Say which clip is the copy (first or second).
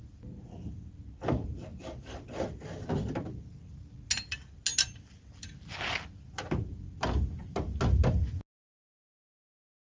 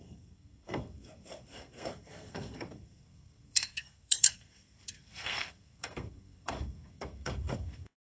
second